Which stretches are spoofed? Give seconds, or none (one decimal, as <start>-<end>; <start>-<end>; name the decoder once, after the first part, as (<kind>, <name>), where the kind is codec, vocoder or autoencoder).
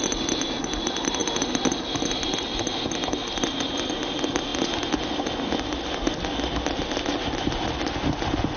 none